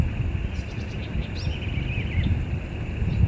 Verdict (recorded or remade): remade